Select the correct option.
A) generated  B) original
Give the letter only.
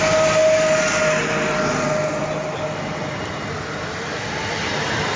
B